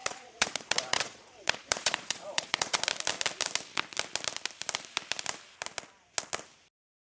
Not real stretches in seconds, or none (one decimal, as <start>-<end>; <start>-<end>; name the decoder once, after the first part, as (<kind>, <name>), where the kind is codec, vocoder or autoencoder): 0.0-2.8 (vocoder, Vocos)